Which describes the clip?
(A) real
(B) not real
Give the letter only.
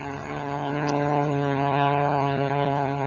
B